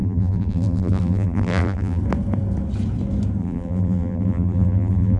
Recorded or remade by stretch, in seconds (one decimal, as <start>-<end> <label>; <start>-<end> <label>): 0.0-2.0 remade; 2.0-3.4 recorded; 3.4-5.2 remade